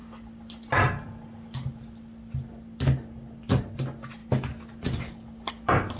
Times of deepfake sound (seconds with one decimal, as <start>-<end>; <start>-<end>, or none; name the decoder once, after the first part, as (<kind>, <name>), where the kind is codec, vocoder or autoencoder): none